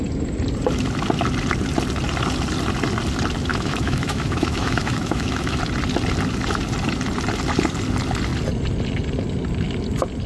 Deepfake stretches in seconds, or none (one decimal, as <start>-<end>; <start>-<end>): 3.5-5.6